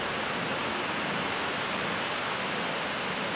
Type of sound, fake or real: real